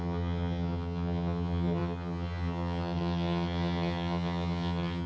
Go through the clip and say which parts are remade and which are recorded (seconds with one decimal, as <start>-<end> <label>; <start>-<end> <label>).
0.0-5.1 remade